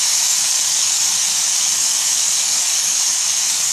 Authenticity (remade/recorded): remade